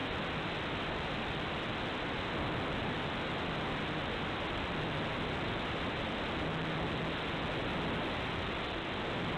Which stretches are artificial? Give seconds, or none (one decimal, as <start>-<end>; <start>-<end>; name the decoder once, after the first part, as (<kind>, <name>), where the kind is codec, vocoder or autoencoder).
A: none